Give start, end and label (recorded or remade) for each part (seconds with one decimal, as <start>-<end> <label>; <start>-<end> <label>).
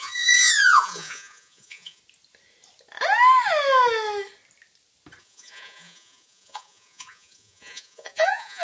0.0-2.0 remade; 2.0-5.2 recorded; 5.2-8.6 remade